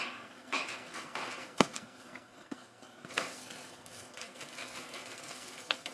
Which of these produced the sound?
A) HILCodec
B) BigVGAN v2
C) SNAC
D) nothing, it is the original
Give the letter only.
C